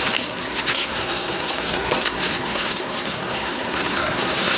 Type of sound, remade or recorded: remade